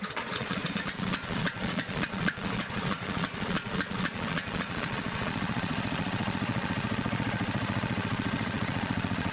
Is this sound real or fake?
fake